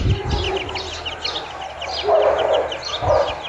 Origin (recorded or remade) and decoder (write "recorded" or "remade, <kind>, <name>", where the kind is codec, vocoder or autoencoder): recorded